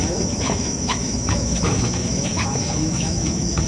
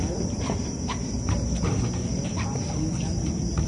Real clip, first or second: second